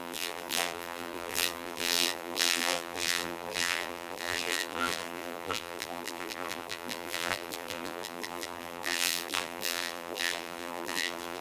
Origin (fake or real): fake